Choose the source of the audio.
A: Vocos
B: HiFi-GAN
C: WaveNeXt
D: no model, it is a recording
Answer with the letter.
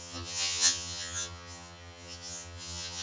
B